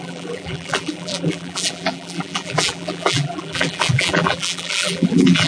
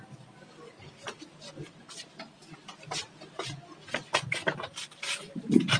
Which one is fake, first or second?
first